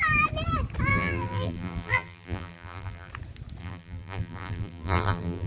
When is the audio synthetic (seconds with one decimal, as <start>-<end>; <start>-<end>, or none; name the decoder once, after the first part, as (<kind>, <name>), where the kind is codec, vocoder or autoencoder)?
0.9-3.1 (vocoder, BigVGAN v2); 3.6-5.5

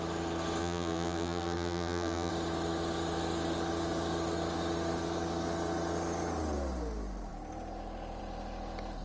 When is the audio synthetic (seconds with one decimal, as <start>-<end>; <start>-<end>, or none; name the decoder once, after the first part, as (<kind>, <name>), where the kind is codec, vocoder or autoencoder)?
0.6-2.3 (vocoder, BigVGAN v2)